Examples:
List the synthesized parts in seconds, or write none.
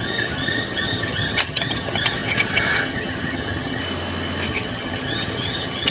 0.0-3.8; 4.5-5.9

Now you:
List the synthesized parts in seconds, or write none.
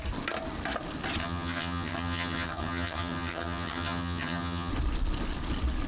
1.2-4.7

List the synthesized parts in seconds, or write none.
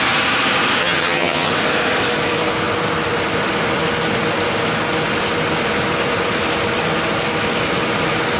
0.8-1.5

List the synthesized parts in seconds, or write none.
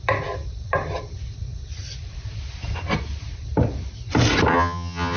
4.5-5.2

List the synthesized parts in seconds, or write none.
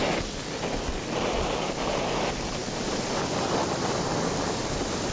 none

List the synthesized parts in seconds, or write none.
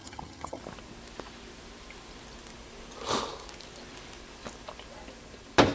0.0-0.6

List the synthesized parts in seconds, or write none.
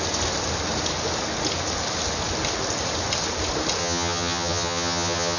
3.8-5.4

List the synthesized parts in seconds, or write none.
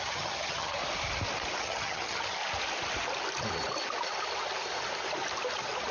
0.0-0.8; 1.6-2.4